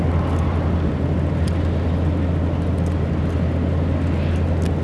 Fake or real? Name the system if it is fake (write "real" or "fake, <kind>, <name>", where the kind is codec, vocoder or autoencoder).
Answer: real